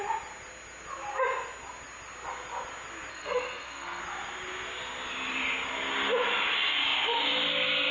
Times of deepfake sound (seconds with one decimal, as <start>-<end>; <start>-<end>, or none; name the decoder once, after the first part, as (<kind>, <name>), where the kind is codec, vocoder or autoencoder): 3.1-4.0 (codec, SNAC)